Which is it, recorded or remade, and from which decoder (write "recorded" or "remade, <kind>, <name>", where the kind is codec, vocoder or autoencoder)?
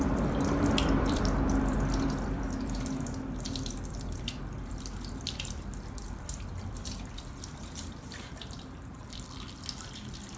remade, vocoder, BigVGAN v2